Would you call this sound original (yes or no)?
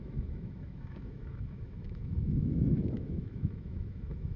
no